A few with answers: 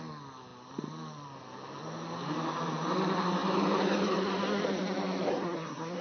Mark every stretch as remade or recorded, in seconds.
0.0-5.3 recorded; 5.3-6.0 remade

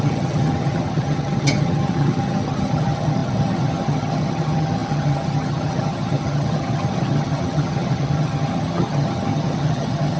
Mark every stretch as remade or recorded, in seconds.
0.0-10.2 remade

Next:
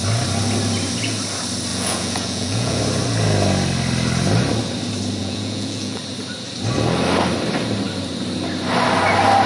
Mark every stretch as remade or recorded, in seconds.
0.0-1.7 recorded; 1.7-2.8 remade; 2.8-5.2 recorded; 5.2-6.0 remade; 6.0-9.5 recorded